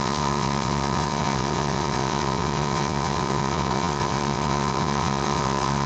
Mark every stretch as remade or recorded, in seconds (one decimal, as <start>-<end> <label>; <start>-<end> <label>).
0.0-5.9 remade